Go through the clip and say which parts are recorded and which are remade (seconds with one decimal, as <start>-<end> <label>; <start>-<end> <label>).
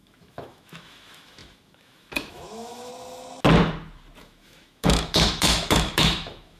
0.0-2.9 remade; 2.9-4.2 recorded; 4.2-6.6 remade